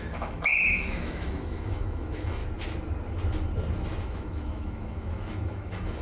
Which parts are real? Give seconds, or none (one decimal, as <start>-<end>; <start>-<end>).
2.4-4.0